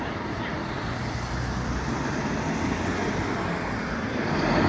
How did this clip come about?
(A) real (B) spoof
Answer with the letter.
A